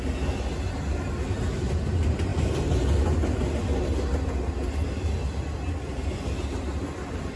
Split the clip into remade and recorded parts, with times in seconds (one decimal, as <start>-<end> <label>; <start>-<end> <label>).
0.0-7.4 recorded